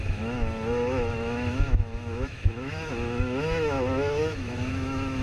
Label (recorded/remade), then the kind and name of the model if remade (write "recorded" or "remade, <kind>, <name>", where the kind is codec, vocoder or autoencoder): remade, autoencoder, DAC-VAE